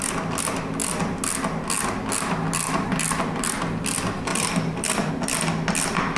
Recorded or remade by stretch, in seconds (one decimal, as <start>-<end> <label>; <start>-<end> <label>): 0.0-4.3 recorded; 4.3-5.1 remade; 5.1-6.2 recorded